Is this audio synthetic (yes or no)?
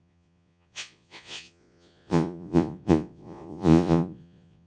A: yes